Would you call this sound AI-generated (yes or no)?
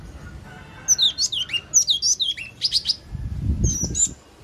no